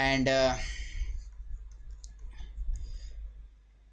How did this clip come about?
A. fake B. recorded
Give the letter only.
B